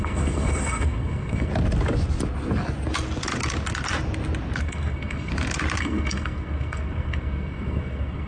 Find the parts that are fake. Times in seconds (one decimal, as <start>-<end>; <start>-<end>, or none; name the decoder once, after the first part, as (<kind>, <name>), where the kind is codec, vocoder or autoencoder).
0.0-1.5 (codec, SNAC); 4.6-5.3; 5.8-8.3